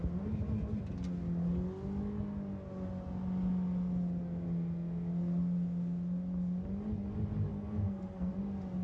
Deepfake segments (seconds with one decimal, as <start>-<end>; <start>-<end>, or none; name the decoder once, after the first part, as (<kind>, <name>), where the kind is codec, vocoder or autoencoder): 7.5-8.3 (codec, SNAC)